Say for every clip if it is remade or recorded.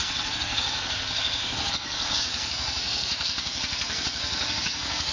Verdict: remade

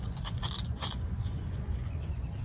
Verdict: remade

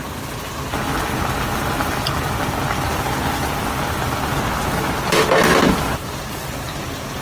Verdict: recorded